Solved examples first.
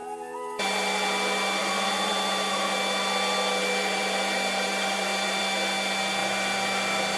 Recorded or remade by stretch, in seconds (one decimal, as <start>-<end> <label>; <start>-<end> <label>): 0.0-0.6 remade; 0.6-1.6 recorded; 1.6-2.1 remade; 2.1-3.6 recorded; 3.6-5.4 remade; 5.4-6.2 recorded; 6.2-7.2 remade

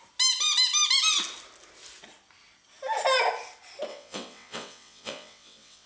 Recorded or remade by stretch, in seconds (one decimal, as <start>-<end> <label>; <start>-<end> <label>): 0.0-3.9 recorded; 3.9-5.9 remade

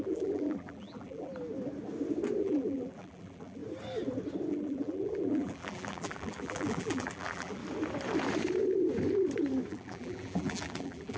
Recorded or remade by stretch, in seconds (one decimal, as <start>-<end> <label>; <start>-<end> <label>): 0.0-1.3 remade; 1.3-2.4 recorded; 2.4-3.6 remade; 3.6-4.5 recorded; 4.5-7.6 remade; 7.6-9.7 recorded; 9.7-11.2 remade

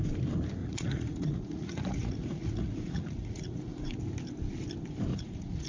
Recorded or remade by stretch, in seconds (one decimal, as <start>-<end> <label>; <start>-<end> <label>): 0.0-0.6 recorded; 0.6-4.0 remade; 4.0-5.1 recorded; 5.1-5.7 remade

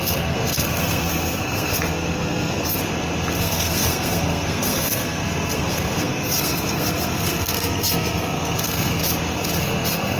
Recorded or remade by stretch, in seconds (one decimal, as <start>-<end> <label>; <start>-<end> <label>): 0.0-2.8 remade; 2.8-3.4 recorded; 3.4-9.0 remade; 9.0-9.6 recorded; 9.6-10.2 remade